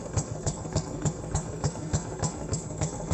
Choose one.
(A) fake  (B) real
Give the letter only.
A